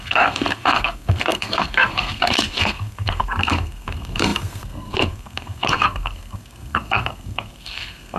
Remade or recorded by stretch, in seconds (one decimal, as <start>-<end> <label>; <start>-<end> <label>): 0.0-8.2 remade